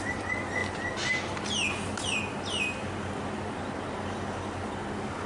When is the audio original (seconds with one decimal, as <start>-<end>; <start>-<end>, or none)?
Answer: 0.0-5.3